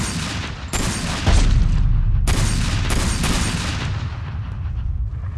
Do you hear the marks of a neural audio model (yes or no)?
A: no